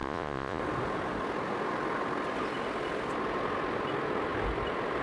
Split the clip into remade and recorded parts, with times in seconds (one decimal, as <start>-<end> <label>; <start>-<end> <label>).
0.0-0.6 remade; 0.6-5.0 recorded